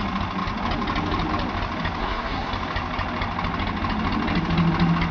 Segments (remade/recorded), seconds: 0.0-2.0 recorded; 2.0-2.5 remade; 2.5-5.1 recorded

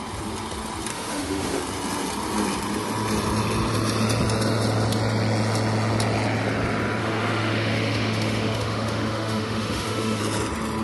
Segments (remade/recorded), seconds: 0.0-0.9 recorded; 0.9-1.6 remade; 1.6-7.0 recorded; 7.0-10.2 remade; 10.2-10.8 recorded

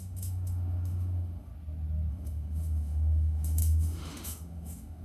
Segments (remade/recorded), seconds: 0.0-1.5 remade; 1.5-2.1 recorded; 2.1-5.0 remade

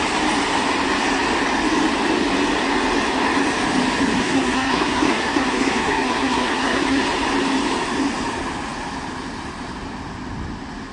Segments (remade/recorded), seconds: 0.0-4.2 recorded; 4.2-7.0 remade; 7.0-10.9 recorded

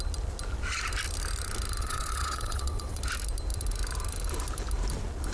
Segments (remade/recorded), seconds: 0.0-1.8 recorded; 1.8-3.0 remade; 3.0-5.3 recorded

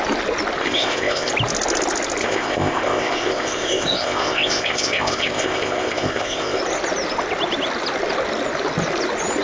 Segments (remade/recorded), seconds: 0.0-0.6 recorded; 0.6-1.3 remade; 1.3-2.2 recorded; 2.2-6.6 remade; 6.6-9.4 recorded

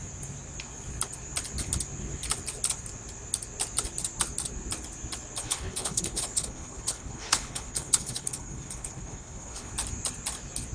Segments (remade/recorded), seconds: 0.0-5.4 recorded; 5.4-9.7 remade; 9.7-10.7 recorded